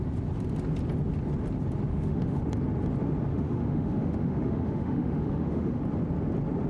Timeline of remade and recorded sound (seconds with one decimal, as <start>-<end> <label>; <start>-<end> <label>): 0.0-1.9 recorded; 1.9-2.4 remade; 2.4-3.3 recorded; 3.3-5.8 remade; 5.8-6.7 recorded